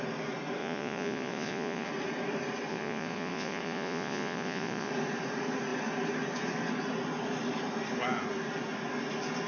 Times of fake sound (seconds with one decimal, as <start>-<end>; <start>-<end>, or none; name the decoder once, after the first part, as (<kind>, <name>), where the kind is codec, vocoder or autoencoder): 0.6-1.9 (vocoder, Vocos); 2.7-4.9